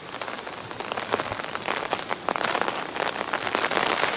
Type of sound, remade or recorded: recorded